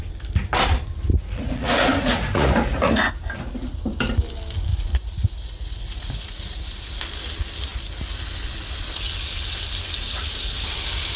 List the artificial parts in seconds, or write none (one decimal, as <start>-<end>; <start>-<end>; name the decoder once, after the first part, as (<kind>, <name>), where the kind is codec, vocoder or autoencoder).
1.1-3.1 (vocoder, Vocos); 4.7-7.0